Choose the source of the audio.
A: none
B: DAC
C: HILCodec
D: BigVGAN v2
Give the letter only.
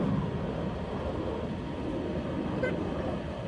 A